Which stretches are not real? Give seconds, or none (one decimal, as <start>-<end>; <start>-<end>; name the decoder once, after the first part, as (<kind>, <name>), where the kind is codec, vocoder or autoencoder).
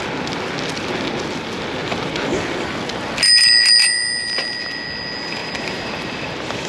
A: 5.4-6.7 (vocoder, BigVGAN v2)